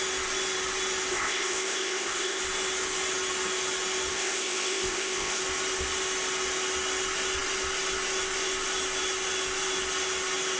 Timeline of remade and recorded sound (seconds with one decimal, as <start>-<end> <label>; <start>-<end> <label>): 0.0-1.1 recorded; 1.1-2.4 remade; 2.4-4.1 recorded; 4.1-5.4 remade; 5.4-10.6 recorded